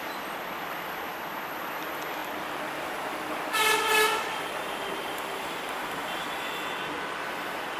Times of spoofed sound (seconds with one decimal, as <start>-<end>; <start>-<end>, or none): none